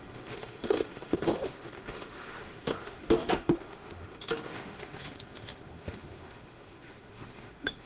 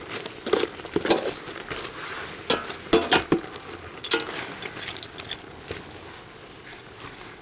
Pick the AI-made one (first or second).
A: first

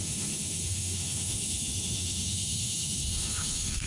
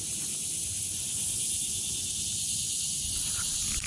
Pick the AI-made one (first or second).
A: first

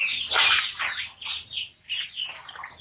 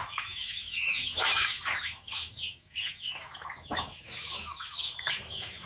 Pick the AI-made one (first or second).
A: second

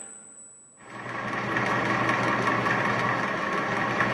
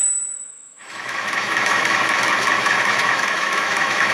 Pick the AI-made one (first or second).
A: second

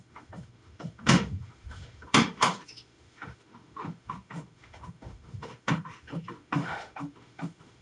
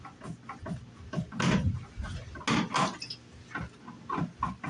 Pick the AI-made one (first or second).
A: first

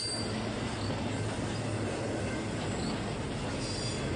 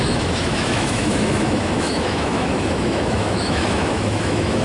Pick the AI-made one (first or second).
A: second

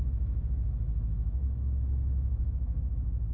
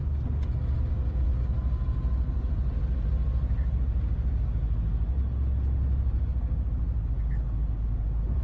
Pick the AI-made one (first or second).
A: first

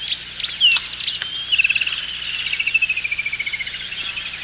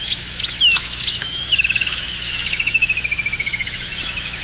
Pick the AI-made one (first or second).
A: second